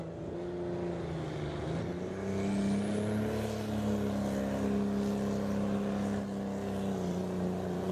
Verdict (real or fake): real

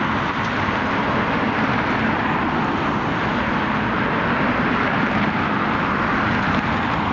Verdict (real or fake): real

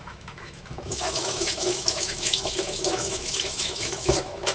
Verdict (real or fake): fake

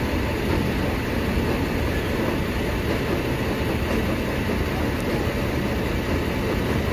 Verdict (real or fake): real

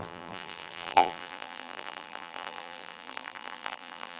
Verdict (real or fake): fake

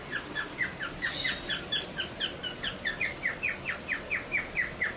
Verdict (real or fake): real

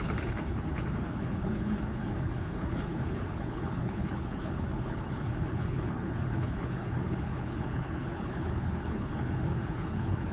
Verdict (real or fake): fake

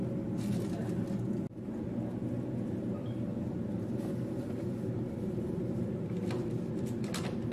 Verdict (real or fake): real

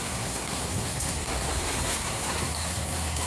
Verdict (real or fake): fake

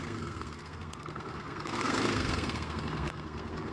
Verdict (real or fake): fake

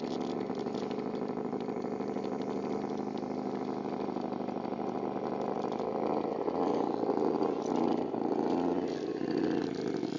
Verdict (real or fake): real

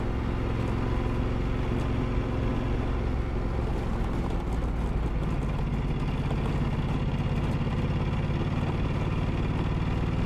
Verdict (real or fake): real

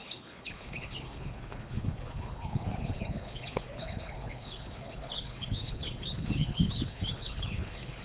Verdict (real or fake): fake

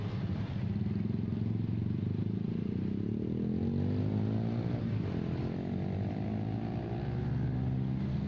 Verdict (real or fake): real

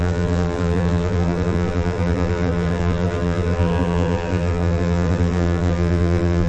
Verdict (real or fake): fake